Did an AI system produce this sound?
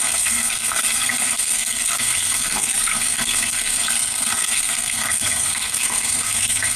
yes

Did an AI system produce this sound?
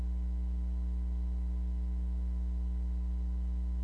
no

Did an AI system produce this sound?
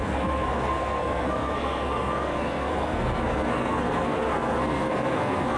yes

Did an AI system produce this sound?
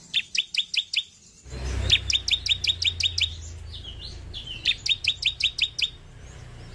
no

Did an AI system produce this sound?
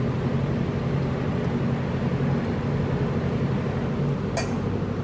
no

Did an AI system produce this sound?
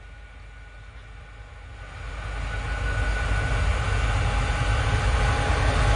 no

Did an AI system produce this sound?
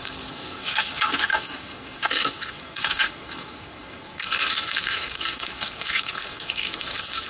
yes